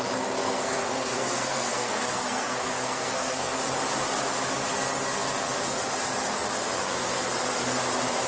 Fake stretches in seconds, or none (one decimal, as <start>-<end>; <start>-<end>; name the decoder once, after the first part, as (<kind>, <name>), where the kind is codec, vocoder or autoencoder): 0.4-3.6 (codec, SNAC)